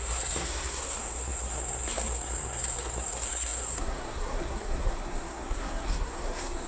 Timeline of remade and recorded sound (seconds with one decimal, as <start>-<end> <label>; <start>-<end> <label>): 0.0-6.7 remade